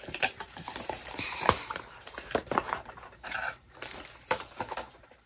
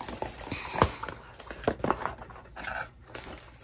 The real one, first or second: second